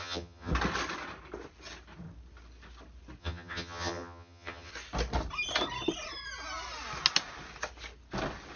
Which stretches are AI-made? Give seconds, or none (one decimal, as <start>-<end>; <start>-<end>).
0.0-0.5; 3.2-4.7